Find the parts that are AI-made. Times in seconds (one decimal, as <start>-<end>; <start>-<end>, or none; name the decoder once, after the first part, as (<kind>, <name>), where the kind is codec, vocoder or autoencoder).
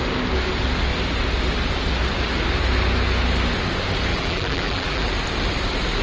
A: 4.1-5.1 (vocoder, BigVGAN v2)